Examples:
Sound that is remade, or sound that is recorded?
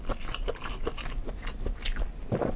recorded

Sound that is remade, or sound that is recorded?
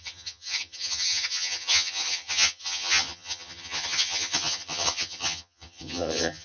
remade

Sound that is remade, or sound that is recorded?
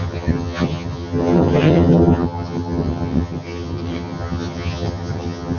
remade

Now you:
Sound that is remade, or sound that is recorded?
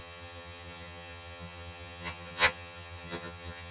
remade